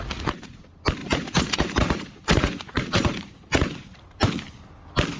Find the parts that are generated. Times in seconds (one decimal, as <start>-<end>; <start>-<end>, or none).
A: 0.0-0.6; 1.0-4.1